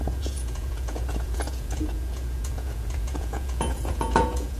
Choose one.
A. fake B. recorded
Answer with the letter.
A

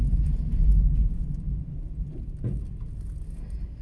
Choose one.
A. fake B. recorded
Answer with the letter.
B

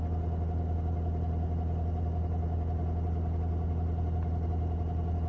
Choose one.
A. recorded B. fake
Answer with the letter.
A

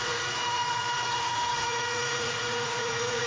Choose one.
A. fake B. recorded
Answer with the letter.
A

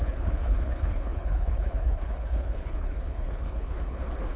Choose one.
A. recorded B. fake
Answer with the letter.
B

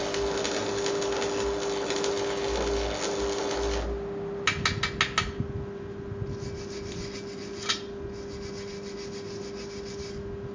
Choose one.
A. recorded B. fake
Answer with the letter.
A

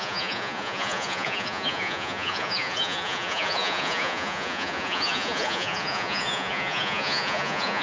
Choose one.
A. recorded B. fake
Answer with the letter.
B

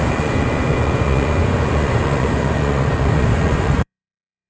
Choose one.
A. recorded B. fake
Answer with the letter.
B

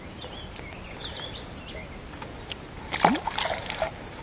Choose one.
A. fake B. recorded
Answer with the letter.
B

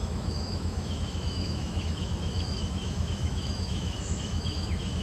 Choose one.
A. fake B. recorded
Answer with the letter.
A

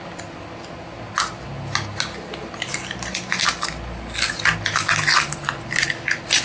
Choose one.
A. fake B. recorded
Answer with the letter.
B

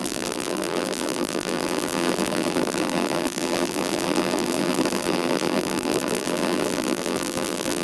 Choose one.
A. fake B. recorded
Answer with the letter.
A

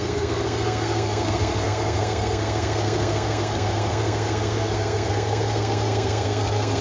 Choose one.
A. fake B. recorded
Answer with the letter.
A